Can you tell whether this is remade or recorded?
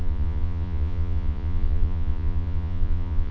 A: remade